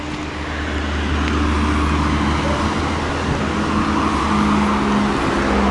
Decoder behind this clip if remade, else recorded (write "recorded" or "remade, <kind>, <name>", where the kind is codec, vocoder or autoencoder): recorded